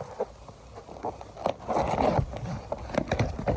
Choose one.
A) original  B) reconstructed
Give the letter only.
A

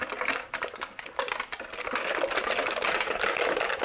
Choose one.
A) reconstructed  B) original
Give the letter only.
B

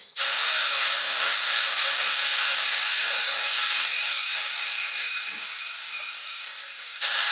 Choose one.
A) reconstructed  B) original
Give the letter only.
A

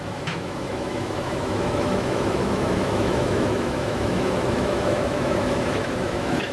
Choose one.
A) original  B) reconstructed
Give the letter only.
B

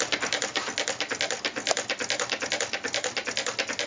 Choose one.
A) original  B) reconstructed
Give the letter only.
A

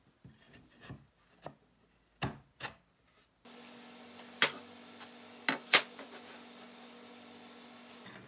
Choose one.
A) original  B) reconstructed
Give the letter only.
A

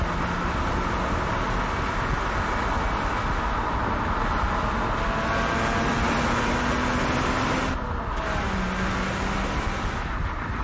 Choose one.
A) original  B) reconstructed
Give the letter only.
A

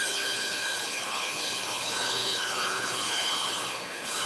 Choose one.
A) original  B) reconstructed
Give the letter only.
B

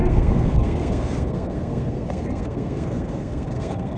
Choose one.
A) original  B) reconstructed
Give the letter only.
B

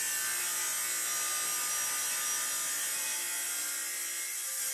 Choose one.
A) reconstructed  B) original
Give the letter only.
B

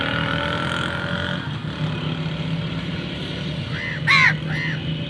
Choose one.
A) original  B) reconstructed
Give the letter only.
A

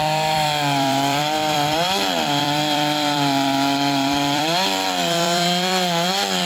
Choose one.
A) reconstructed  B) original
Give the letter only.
A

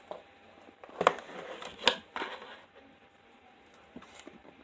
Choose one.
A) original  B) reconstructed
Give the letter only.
A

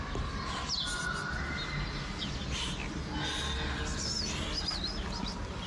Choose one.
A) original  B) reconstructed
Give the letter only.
A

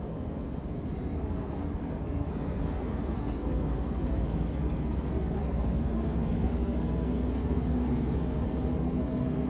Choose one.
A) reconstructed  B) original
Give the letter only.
A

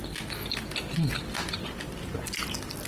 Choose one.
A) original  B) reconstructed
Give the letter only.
A